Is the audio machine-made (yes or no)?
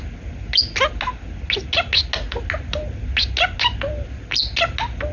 no